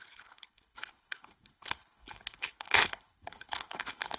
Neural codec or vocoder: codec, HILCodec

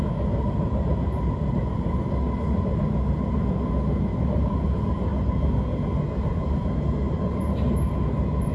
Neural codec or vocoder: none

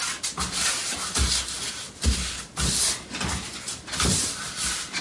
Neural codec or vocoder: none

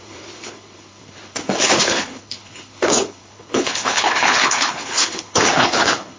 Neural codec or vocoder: codec, HILCodec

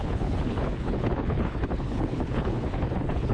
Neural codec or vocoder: codec, HILCodec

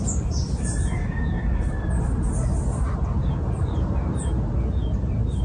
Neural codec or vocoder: none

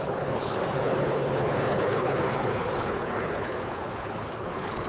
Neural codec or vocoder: codec, HILCodec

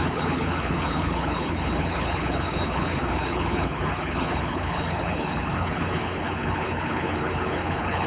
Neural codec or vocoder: codec, HILCodec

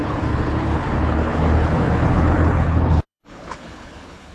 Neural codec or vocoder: codec, HILCodec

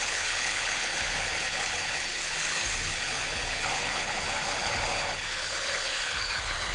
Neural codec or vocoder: codec, HILCodec